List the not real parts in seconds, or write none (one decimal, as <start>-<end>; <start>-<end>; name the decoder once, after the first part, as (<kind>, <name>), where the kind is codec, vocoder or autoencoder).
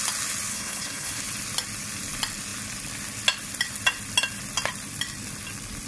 0.5-1.2 (codec, HILCodec)